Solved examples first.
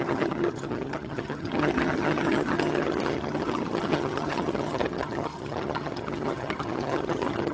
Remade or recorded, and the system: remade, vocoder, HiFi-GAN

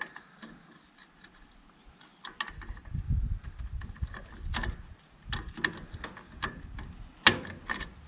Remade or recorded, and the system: recorded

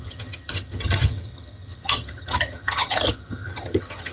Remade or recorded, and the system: remade, vocoder, HiFi-GAN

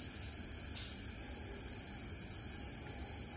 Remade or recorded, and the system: recorded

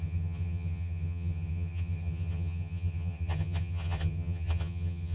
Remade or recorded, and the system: remade, vocoder, HiFi-GAN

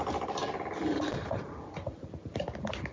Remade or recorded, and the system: recorded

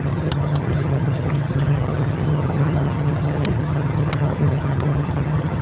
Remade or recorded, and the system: remade, vocoder, HiFi-GAN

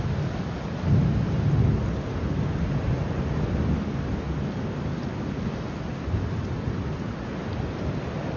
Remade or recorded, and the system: recorded